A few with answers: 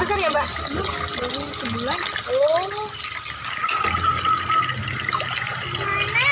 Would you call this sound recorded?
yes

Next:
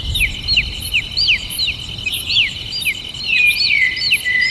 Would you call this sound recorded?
no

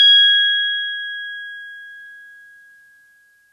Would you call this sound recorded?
yes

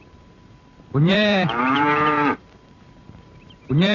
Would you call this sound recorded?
no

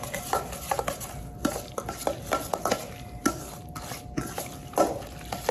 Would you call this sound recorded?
yes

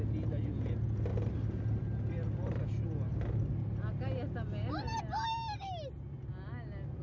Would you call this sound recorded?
yes